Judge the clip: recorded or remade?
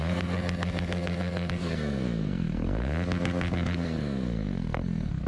remade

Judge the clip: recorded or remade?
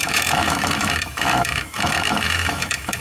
remade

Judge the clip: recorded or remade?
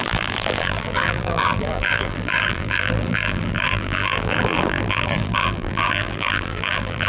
remade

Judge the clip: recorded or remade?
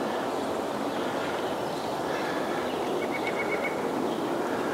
recorded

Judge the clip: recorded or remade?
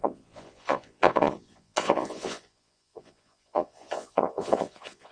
remade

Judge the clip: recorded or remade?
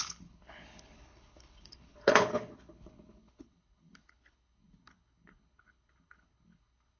remade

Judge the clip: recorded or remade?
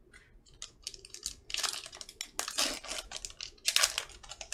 recorded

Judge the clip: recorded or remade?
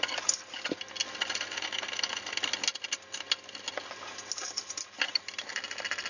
recorded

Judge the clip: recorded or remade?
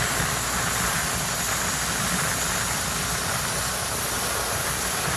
recorded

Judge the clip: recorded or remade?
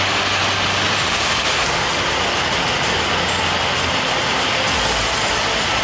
recorded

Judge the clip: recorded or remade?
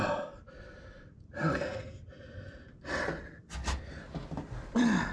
recorded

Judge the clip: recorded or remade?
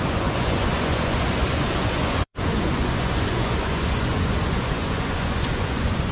remade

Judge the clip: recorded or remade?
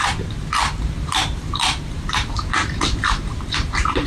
remade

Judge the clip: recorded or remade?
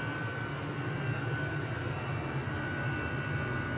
recorded